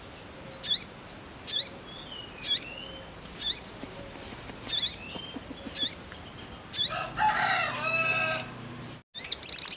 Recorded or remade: recorded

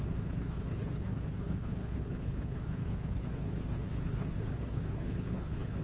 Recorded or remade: remade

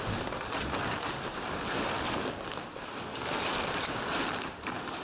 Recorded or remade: recorded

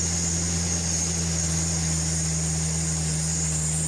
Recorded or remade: recorded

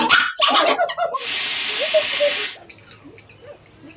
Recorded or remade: recorded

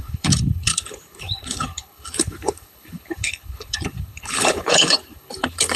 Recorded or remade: remade